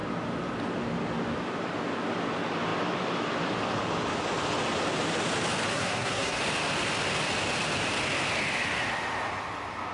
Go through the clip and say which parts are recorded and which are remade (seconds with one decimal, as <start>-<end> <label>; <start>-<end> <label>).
0.0-5.7 recorded; 5.7-6.4 remade; 6.4-9.9 recorded